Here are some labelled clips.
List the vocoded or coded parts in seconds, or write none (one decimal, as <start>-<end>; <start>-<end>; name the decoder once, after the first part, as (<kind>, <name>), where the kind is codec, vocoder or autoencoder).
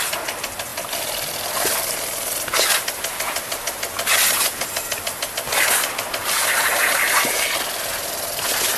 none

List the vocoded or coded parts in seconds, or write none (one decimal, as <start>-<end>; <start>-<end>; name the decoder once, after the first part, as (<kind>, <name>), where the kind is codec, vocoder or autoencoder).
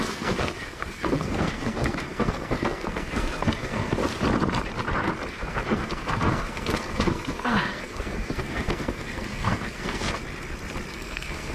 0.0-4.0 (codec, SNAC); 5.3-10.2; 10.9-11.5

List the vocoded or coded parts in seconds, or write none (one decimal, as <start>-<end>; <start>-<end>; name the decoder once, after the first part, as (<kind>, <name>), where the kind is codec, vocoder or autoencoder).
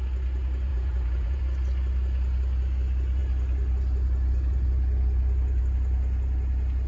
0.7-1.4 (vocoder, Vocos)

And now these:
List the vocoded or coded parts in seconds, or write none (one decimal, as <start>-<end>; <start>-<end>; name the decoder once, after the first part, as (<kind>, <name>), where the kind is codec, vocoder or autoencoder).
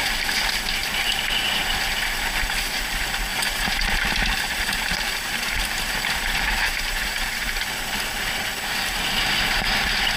0.8-1.6 (vocoder, BigVGAN v2); 3.3-7.8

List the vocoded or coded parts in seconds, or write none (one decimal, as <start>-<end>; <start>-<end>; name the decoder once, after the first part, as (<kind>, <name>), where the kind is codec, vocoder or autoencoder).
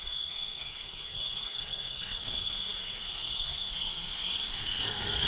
0.0-5.3 (codec, SNAC)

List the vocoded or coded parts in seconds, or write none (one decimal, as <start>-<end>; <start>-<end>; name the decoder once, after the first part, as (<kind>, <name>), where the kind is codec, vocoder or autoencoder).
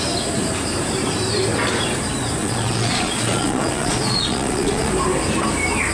2.4-4.9 (vocoder, Vocos)